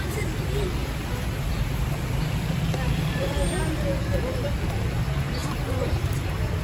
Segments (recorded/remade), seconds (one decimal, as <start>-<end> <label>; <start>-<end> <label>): 0.0-0.8 remade; 0.8-2.1 recorded; 2.1-5.4 remade; 5.4-6.6 recorded